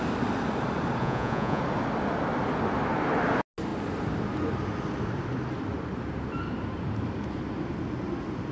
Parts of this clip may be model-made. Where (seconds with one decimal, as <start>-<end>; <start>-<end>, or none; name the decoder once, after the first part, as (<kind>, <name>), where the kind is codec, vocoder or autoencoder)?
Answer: 1.0-1.6 (vocoder, Vocos)